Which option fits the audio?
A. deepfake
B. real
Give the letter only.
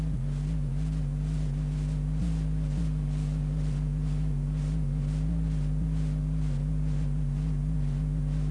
B